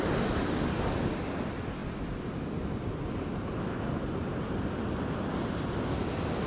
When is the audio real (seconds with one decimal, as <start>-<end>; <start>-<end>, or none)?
0.0-6.5